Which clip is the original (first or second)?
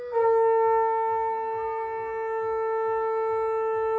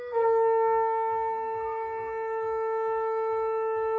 first